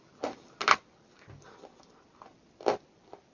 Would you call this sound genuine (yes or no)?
yes